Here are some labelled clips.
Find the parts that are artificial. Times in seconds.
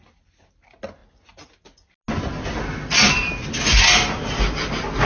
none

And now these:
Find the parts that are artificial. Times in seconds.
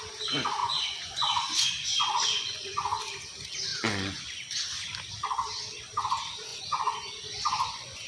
0.6-3.0 (vocoder, Vocos); 3.7-4.2; 6.5-8.1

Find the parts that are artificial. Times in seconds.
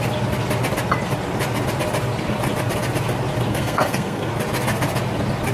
3.5-4.3 (codec, SNAC)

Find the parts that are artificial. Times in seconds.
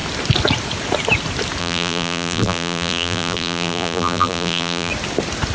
1.6-4.9 (vocoder, BigVGAN v2)